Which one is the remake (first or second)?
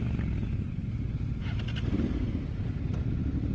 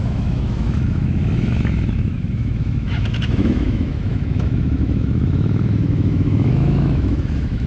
second